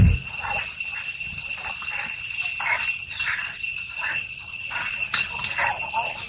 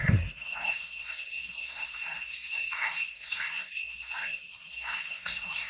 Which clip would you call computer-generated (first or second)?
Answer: second